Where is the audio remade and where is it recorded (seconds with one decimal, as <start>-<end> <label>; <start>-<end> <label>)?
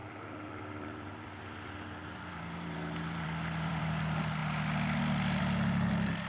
0.0-3.8 remade; 3.8-6.3 recorded